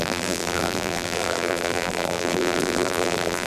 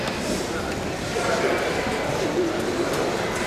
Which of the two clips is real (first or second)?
second